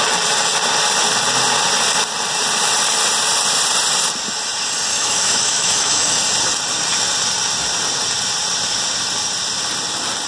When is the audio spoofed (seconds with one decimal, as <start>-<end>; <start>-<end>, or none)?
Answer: 4.9-6.2